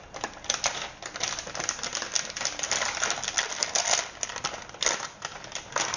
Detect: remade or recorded recorded